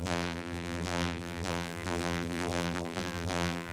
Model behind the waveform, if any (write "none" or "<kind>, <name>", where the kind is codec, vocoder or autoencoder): vocoder, BigVGAN v2